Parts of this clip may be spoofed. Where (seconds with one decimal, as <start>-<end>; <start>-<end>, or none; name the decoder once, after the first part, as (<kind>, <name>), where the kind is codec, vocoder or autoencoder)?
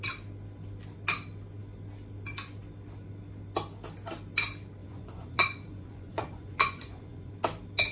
4.8-7.3 (vocoder, Vocos)